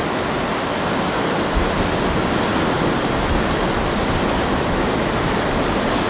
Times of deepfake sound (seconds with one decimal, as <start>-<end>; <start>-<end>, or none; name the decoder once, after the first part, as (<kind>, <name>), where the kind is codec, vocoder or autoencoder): none